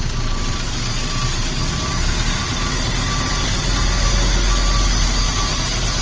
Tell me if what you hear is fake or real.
real